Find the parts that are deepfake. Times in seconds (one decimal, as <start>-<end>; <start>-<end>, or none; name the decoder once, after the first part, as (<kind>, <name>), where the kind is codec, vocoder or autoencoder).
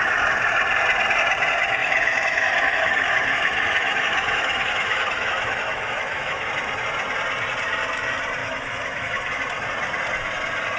1.8-6.5 (autoencoder, DAC-VAE); 8.4-9.4